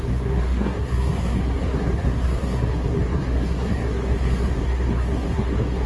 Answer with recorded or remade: remade